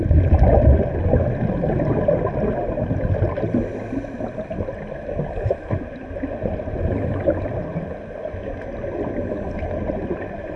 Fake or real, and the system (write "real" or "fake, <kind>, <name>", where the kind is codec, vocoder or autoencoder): real